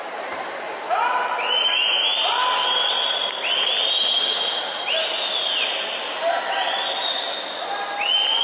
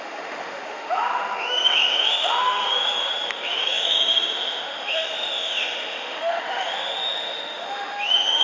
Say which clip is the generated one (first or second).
second